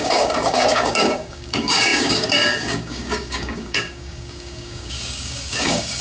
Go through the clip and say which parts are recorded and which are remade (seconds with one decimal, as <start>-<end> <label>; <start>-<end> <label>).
0.0-6.0 remade